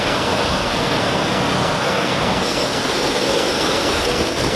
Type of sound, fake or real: fake